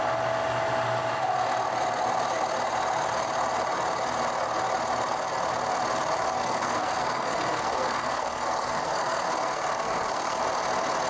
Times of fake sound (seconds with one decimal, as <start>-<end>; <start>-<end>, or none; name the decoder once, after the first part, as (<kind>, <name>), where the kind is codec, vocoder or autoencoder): 6.4-10.4 (codec, SNAC)